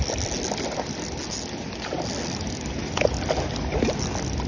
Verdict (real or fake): real